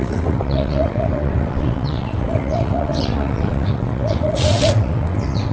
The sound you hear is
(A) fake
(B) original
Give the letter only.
A